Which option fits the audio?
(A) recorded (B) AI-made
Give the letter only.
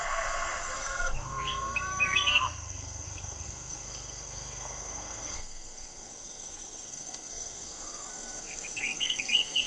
B